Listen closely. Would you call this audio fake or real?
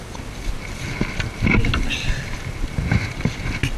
real